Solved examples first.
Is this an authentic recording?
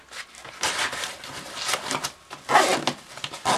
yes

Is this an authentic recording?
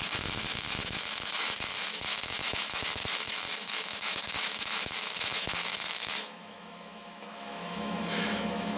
no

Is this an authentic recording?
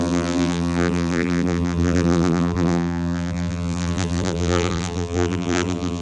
no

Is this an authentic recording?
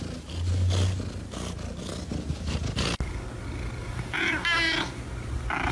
yes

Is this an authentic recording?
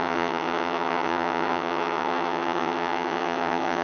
no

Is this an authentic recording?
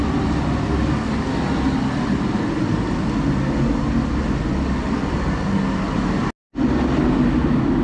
yes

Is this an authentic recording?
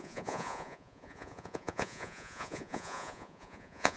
no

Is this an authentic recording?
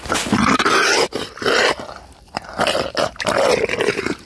yes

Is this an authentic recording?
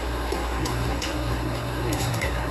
no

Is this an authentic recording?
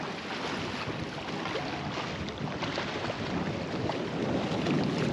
yes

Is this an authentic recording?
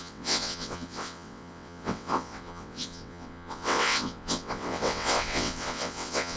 no